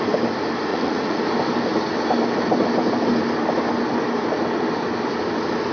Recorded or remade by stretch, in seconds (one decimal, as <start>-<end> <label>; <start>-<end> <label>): 0.0-0.7 recorded; 0.7-1.2 remade; 1.2-5.7 recorded